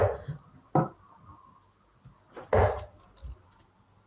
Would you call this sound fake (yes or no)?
no